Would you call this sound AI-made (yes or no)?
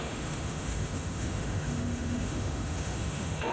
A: yes